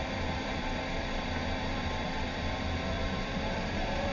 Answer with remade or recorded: remade